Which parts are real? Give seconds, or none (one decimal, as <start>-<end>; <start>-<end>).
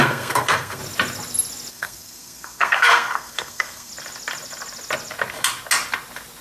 0.8-1.7; 3.9-6.4